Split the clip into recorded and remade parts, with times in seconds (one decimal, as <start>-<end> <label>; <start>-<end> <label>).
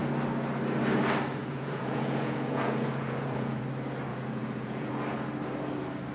0.0-1.4 recorded; 1.4-3.6 remade; 3.6-4.1 recorded; 4.1-4.9 remade; 4.9-6.1 recorded